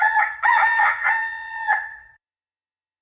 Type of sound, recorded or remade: remade